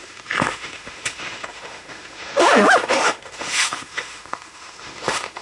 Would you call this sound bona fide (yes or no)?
no